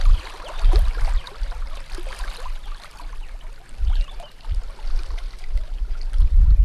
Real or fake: real